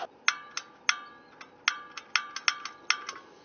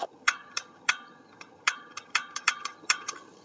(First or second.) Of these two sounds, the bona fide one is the first